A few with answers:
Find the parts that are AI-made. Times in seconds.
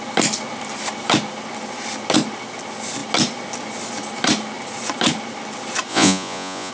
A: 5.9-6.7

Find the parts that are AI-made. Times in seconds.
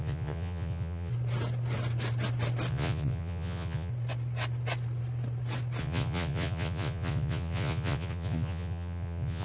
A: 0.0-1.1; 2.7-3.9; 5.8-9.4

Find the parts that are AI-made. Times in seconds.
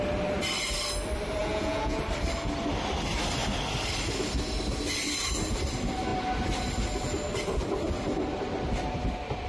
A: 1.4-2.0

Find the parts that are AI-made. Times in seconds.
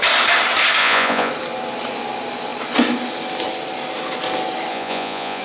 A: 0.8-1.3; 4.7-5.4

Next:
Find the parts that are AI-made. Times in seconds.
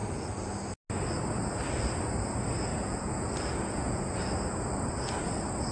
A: 2.7-4.2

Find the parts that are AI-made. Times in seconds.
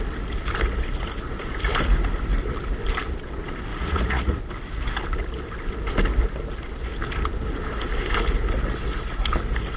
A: 3.7-4.4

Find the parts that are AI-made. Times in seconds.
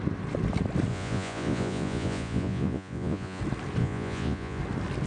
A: 0.9-3.4; 3.8-4.6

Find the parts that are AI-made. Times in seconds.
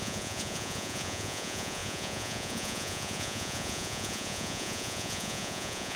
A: 0.0-6.0